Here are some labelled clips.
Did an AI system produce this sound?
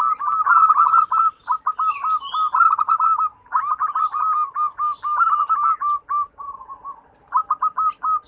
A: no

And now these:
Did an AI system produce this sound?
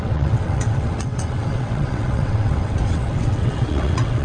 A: yes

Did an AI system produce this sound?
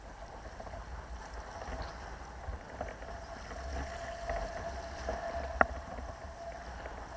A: no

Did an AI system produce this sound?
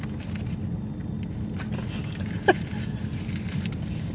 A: no